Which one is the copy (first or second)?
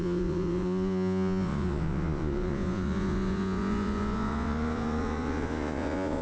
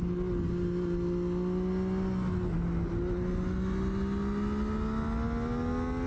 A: first